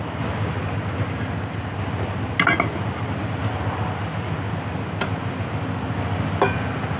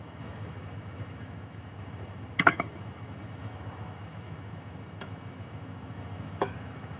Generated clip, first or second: second